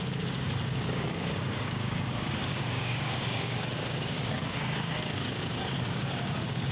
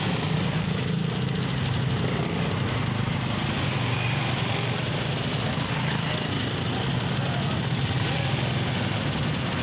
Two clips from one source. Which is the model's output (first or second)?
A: first